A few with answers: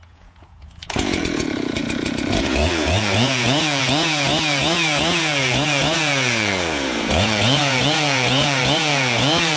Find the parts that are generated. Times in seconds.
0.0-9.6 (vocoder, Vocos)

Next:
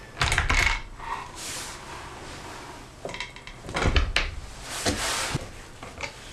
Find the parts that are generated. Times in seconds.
none

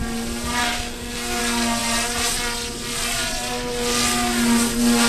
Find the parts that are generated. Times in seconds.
0.6-1.4 (codec, SNAC)

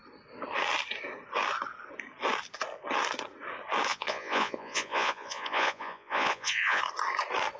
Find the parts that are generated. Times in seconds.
3.9-6.8 (vocoder, Vocos)

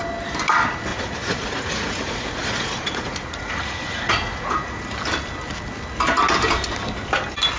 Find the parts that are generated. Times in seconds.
0.9-4.8 (vocoder, Vocos)

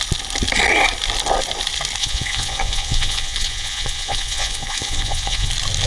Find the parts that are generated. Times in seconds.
2.0-5.5 (vocoder, Vocos)

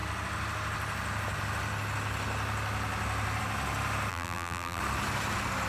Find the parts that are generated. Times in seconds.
4.1-4.8 (vocoder, BigVGAN v2)